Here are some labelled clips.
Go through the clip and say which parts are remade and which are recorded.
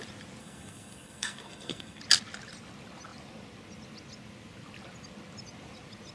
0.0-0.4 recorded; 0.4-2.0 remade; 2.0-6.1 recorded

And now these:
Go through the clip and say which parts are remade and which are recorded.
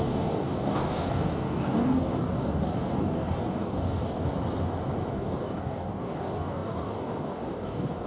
0.0-4.3 remade; 4.3-5.1 recorded; 5.1-8.1 remade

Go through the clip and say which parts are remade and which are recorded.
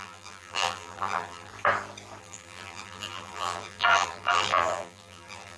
0.0-1.5 remade; 1.5-2.2 recorded; 2.2-5.6 remade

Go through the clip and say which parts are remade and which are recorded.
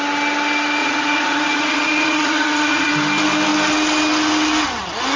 0.0-0.8 recorded; 0.8-2.9 remade; 2.9-5.2 recorded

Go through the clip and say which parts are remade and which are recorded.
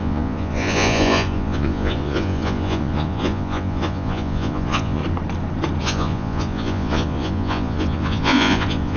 0.0-5.0 remade; 5.0-5.8 recorded; 5.8-9.0 remade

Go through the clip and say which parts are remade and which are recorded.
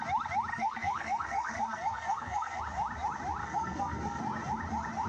0.0-0.5 recorded; 0.5-2.6 remade; 2.6-3.4 recorded; 3.4-4.2 remade; 4.2-5.1 recorded